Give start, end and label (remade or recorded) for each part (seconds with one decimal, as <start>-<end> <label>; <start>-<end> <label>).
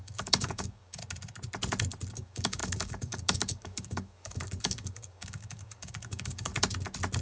0.0-1.0 remade; 1.0-2.1 recorded; 2.1-6.5 remade; 6.5-7.2 recorded